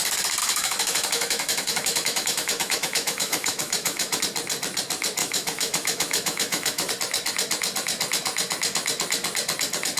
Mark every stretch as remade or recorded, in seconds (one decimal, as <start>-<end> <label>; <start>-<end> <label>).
0.0-0.4 recorded; 0.4-4.2 remade; 4.2-5.2 recorded; 5.2-6.9 remade; 6.9-10.0 recorded